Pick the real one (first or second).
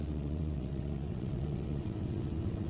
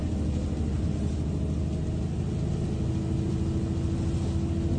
second